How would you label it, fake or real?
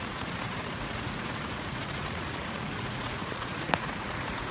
fake